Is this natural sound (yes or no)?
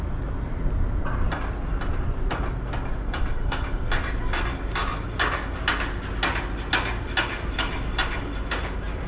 yes